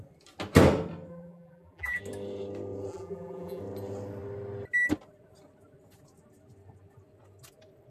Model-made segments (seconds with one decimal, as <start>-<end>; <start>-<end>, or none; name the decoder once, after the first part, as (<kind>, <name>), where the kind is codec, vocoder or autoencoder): 1.1-2.0 (vocoder, BigVGAN v2); 2.9-3.6